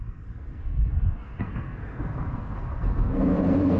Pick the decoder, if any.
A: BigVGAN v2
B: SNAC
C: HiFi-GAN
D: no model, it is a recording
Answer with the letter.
B